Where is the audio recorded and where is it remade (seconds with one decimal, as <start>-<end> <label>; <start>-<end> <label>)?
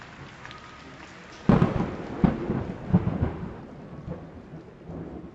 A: 0.0-2.9 recorded; 2.9-3.6 remade; 3.6-5.3 recorded